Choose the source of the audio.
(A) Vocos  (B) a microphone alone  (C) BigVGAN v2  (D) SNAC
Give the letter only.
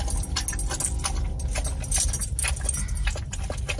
B